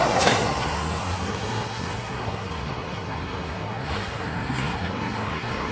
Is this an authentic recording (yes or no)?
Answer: no